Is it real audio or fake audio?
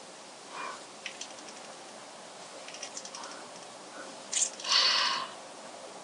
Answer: real